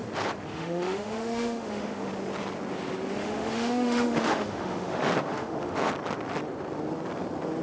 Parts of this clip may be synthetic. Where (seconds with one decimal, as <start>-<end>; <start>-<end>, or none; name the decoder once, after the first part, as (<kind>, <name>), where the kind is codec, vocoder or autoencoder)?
0.5-2.1 (autoencoder, DAC-VAE); 3.2-5.9